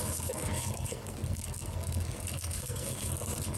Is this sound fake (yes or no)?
yes